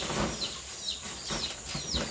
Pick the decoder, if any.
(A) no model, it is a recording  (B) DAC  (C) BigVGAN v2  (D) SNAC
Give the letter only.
A